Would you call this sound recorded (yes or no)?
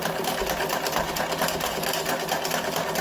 yes